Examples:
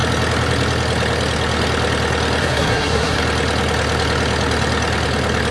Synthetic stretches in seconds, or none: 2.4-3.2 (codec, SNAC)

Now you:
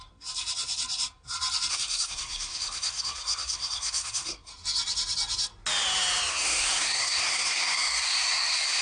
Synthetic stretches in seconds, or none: 1.7-4.5 (codec, SNAC); 6.3-8.8